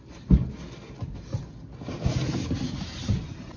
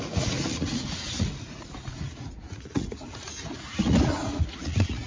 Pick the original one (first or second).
first